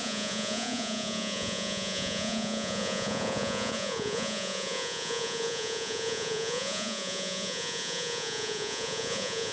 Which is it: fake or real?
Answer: fake